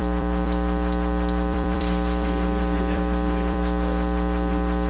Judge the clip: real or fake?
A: fake